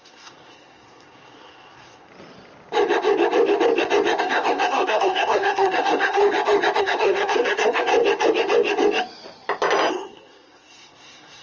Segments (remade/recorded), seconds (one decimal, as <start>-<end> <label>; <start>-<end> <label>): 0.0-2.1 remade; 2.1-4.2 recorded; 4.2-6.2 remade; 6.2-6.8 recorded; 6.8-7.9 remade; 7.9-9.9 recorded; 9.9-11.4 remade